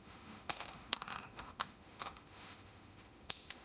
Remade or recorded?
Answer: remade